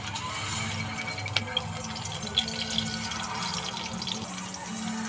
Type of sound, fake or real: real